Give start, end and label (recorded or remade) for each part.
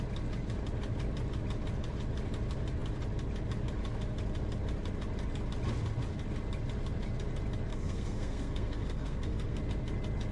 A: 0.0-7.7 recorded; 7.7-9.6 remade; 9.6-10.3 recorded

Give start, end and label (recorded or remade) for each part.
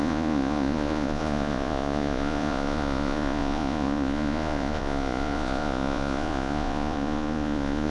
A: 0.0-7.9 remade